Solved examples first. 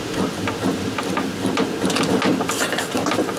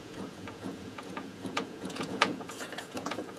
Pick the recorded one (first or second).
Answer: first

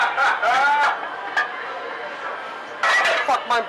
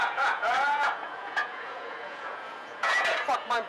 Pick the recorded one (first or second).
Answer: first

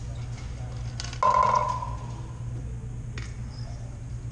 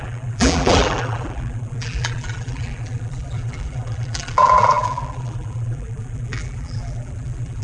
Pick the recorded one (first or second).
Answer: first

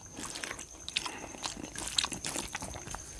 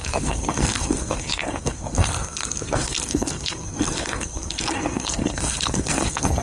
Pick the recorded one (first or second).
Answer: first